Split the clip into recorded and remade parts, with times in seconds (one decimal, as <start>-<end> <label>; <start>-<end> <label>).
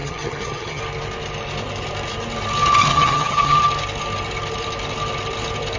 0.0-0.8 remade; 0.8-2.9 recorded; 2.9-3.6 remade; 3.6-5.8 recorded